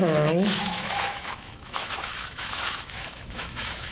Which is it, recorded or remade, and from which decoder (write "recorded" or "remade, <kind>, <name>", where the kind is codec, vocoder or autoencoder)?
remade, autoencoder, DAC-VAE